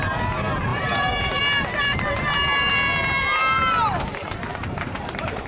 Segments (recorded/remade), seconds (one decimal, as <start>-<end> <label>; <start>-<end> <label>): 0.0-0.7 recorded; 0.7-1.4 remade; 1.4-4.5 recorded; 4.5-5.5 remade